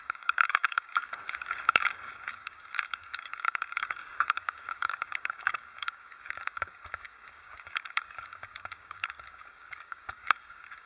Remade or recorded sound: remade